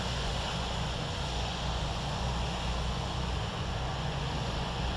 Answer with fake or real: fake